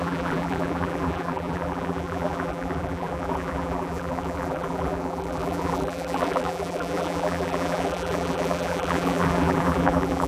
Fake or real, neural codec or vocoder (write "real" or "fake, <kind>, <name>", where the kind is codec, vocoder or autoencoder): fake, vocoder, BigVGAN v2